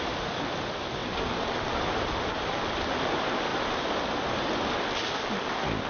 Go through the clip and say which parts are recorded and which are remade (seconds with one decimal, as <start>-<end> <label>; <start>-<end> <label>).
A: 0.0-5.9 recorded